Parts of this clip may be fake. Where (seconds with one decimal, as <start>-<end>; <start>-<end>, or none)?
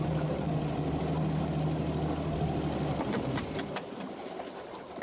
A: 0.0-1.1; 3.8-5.0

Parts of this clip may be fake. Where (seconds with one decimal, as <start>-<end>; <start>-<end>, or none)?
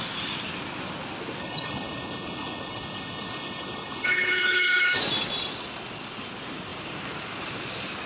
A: 1.4-5.0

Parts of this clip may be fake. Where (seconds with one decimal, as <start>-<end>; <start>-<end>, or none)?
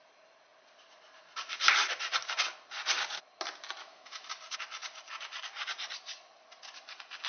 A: 3.8-4.3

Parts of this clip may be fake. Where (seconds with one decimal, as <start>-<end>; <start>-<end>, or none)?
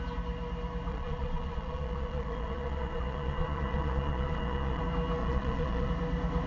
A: 0.9-4.8; 5.2-5.9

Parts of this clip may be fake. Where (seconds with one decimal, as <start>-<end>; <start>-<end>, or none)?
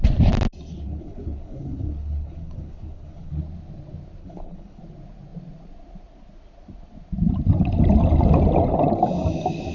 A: 0.7-3.4; 4.2-4.8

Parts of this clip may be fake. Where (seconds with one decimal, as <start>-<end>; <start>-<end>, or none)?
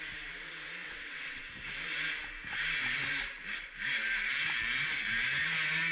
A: 0.8-1.5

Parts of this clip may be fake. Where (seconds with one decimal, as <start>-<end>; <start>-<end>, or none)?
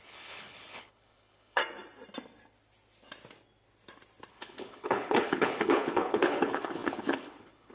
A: 0.0-1.6; 4.3-7.7